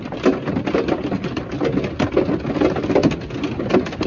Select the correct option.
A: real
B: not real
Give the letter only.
A